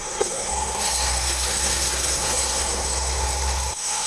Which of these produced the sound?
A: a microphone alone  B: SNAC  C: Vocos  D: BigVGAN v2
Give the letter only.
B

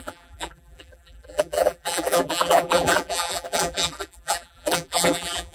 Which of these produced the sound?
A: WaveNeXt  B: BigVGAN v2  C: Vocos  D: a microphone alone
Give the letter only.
B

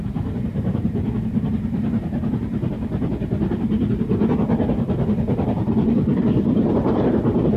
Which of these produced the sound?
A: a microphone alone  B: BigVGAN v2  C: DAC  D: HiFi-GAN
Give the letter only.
B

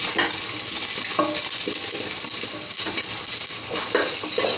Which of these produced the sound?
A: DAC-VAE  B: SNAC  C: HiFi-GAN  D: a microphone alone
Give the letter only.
D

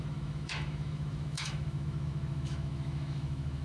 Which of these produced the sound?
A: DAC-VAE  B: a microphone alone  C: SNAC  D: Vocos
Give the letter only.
A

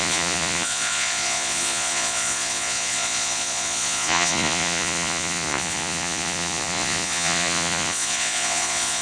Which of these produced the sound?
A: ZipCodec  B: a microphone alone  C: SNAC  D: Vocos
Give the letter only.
D